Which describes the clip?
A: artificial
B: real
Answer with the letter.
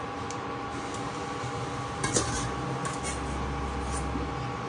B